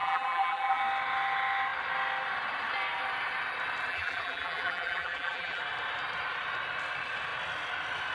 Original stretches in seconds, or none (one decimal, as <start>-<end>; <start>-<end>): 0.8-3.9; 5.6-8.1